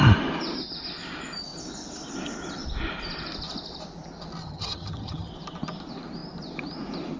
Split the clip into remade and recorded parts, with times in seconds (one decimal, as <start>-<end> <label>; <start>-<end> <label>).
0.0-4.4 recorded; 4.4-5.3 remade; 5.3-7.2 recorded